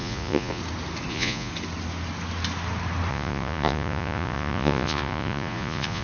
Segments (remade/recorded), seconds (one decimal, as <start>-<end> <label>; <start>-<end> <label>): 0.0-0.6 remade; 0.6-1.1 recorded; 1.1-1.5 remade; 1.5-3.1 recorded; 3.1-6.0 remade